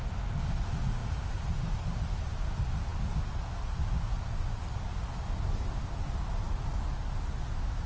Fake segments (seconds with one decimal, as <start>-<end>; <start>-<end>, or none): none